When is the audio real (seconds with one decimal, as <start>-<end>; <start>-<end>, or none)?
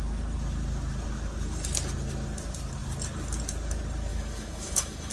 0.0-4.1